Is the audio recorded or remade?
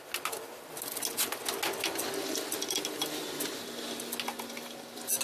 recorded